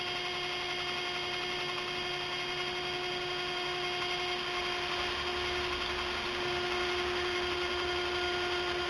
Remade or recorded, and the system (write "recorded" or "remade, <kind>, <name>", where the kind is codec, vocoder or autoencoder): recorded